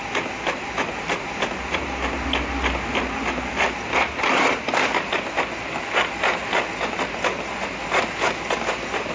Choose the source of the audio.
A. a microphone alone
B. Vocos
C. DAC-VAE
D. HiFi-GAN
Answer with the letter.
A